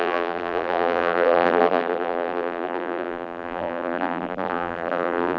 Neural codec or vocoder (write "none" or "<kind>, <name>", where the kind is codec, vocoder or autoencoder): vocoder, BigVGAN v2